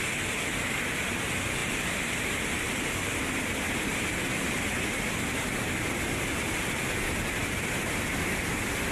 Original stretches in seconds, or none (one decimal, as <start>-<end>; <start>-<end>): 0.0-1.6; 2.8-3.9; 6.8-7.4; 8.5-8.9